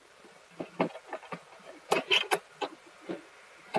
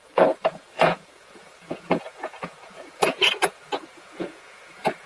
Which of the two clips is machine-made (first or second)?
second